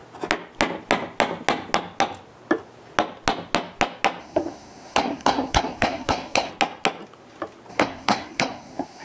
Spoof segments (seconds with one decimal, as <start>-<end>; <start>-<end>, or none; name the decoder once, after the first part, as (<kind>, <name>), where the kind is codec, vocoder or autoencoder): 4.2-6.5 (codec, SNAC); 7.7-9.0